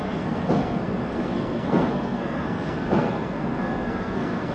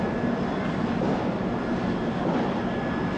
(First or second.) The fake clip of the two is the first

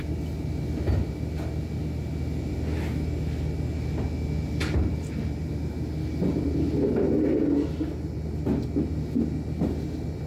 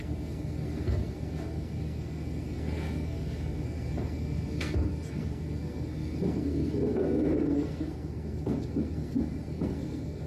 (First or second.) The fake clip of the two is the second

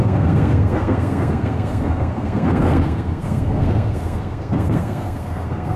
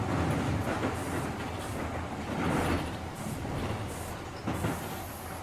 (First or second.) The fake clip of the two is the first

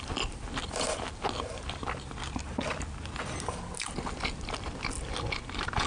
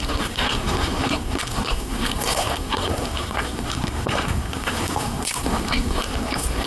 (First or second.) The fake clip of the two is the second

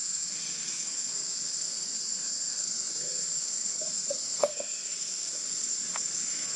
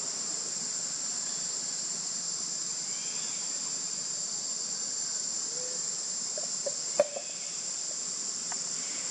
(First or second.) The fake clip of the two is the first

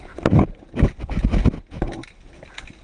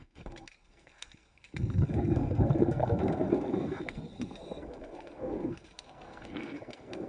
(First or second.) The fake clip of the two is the second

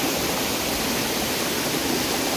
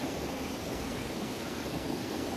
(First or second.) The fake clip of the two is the second